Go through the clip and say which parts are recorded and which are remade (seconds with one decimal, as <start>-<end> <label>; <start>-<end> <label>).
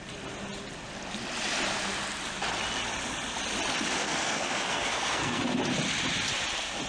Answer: 0.0-4.0 recorded; 4.0-5.4 remade; 5.4-6.9 recorded